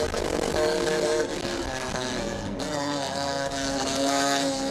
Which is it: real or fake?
fake